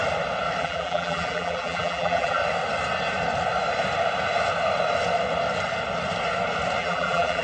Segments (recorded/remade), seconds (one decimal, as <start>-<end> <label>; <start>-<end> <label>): 0.0-0.6 recorded; 0.6-2.4 remade; 2.4-6.8 recorded; 6.8-7.4 remade